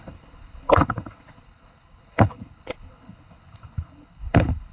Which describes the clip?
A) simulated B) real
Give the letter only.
A